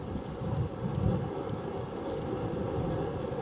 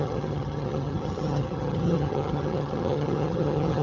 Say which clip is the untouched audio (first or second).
first